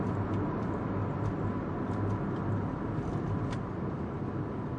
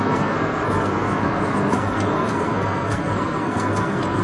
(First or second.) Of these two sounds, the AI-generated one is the second